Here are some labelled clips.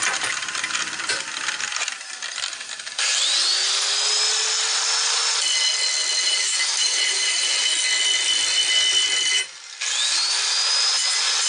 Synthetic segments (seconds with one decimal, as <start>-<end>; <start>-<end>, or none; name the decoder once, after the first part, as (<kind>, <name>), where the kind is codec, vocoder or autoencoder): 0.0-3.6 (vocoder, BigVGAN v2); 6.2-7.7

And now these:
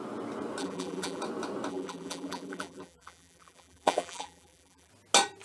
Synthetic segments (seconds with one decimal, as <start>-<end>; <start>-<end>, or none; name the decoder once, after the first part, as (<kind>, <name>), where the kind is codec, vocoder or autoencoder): 0.6-1.2 (vocoder, BigVGAN v2); 1.7-4.9

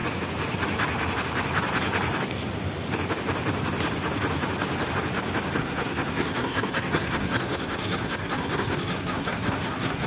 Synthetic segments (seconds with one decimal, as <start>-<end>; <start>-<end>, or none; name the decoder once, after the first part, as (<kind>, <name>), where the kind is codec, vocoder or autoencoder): 5.6-10.1 (codec, SNAC)

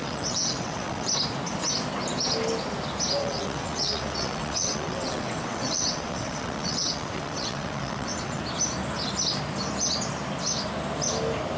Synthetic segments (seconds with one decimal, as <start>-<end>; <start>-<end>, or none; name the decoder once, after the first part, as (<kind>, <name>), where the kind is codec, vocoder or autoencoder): 0.0-1.1 (vocoder, WaveNeXt); 3.2-8.4

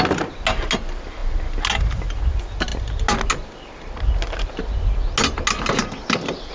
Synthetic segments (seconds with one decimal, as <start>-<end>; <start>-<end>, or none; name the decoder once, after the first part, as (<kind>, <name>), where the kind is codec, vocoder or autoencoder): none